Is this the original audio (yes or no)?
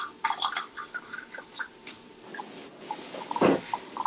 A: yes